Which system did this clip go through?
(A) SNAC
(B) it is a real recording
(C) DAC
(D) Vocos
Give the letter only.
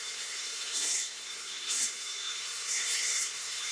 A